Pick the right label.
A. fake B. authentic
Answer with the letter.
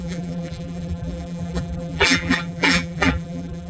A